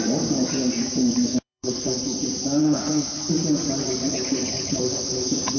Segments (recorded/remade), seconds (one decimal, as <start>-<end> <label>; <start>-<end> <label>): 0.0-1.3 recorded; 1.3-2.2 remade; 2.2-2.6 recorded; 2.6-3.3 remade; 3.3-4.0 recorded; 4.0-5.6 remade